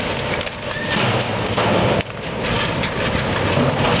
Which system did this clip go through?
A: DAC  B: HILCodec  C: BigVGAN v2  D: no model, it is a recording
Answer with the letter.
D